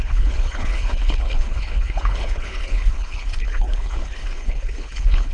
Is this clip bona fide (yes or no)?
no